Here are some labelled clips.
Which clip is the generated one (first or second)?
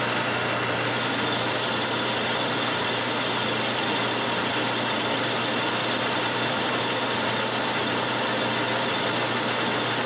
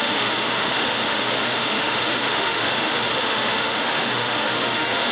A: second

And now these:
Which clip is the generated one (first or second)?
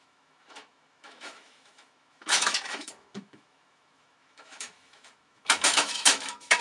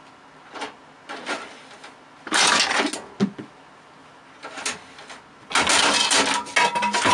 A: first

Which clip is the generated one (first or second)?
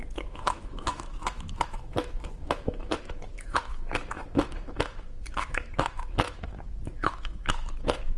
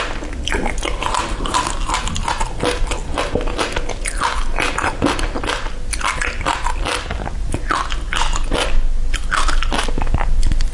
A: first